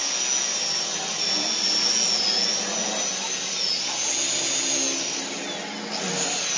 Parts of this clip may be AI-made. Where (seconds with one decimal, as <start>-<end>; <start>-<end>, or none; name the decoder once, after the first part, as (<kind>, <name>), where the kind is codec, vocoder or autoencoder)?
none